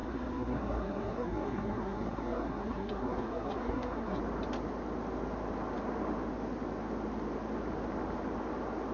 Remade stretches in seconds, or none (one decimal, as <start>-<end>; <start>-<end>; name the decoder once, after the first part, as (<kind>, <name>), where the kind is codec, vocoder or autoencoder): 0.0-4.2 (codec, SNAC)